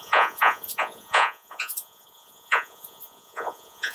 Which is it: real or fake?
fake